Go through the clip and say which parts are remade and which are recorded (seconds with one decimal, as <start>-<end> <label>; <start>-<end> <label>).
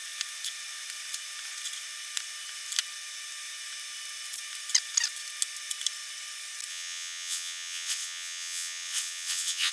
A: 0.0-6.7 recorded; 6.7-9.7 remade